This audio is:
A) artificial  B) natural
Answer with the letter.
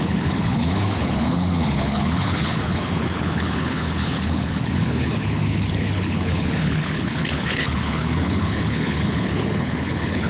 A